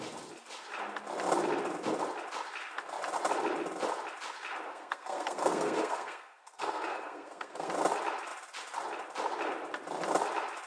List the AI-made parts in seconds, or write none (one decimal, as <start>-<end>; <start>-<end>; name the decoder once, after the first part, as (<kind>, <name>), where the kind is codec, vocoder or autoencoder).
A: 4.7-7.7 (codec, SNAC)

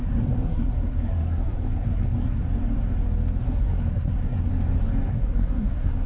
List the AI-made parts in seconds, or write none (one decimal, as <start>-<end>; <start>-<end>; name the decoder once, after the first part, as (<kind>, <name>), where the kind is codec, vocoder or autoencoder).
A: 0.0-2.4 (codec, SNAC); 3.4-4.5; 5.1-6.1

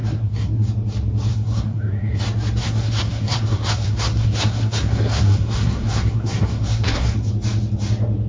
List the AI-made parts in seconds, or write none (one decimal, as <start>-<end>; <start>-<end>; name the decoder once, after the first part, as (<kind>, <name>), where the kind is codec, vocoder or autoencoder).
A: 0.0-0.7 (codec, SNAC); 1.3-2.2; 2.6-7.3

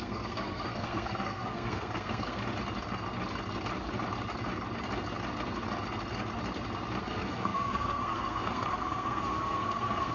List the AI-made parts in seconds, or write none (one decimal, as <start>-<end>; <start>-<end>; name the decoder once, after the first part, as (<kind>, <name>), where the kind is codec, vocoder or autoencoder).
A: 0.0-2.4 (codec, SNAC); 7.0-10.1

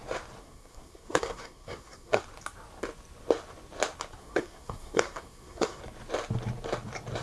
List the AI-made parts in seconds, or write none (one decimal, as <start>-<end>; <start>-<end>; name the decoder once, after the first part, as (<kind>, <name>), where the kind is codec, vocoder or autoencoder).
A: 0.4-2.2 (codec, SNAC); 4.2-5.8

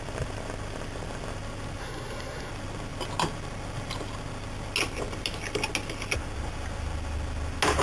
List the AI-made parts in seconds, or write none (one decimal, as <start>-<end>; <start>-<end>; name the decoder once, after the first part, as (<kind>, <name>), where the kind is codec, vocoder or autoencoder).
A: 1.8-2.5 (codec, SNAC)

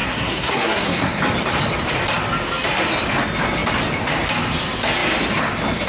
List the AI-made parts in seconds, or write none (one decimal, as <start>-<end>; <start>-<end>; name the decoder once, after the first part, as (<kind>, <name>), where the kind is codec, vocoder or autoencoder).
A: 0.0-1.2 (codec, SNAC)

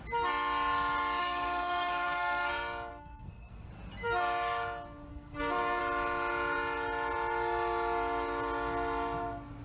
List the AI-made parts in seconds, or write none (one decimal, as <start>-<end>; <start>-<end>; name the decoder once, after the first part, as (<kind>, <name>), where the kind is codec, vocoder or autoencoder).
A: 1.2-2.5 (codec, SNAC); 2.9-3.7; 5.1-5.8